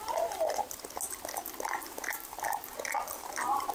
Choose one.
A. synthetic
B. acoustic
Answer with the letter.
B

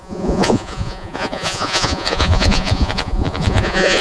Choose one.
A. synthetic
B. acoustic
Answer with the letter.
A